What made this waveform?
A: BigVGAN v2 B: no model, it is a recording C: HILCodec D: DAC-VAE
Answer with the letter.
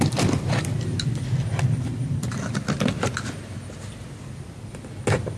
B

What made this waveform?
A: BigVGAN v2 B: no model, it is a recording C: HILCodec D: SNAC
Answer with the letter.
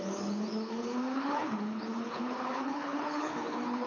C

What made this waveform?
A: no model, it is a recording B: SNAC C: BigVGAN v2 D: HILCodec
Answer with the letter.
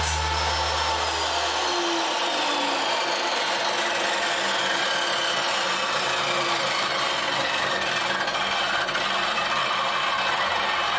A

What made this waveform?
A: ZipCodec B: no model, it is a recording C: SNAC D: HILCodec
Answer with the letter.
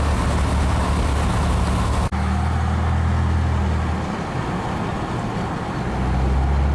B